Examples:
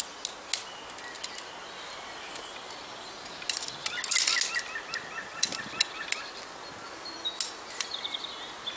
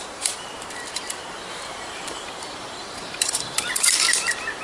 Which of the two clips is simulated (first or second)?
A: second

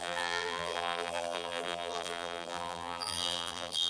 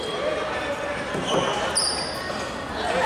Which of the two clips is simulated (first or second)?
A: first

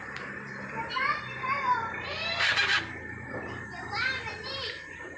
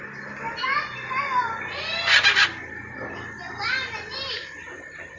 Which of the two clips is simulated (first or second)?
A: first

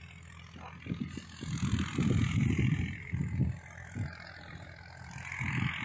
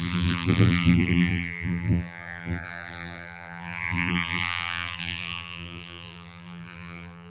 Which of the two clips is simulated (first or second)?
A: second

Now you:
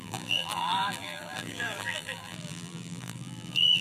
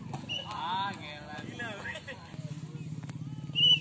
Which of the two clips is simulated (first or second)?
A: first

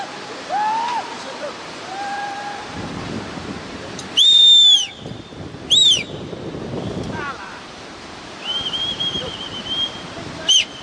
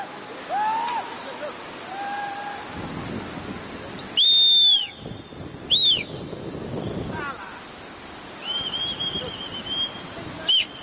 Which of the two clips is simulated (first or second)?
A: first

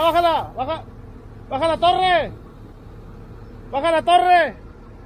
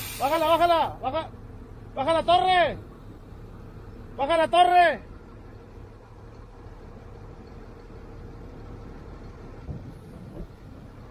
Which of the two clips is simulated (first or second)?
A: second